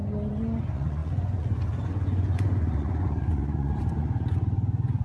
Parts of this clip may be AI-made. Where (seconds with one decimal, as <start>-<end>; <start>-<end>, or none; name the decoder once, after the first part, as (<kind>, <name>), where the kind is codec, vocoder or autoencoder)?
0.6-5.0 (vocoder, Vocos)